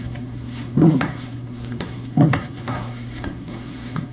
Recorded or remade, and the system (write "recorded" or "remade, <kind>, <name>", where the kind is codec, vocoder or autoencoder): remade, codec, SNAC